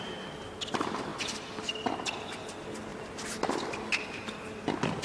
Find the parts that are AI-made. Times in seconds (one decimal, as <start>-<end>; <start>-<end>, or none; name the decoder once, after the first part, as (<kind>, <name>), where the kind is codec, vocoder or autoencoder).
none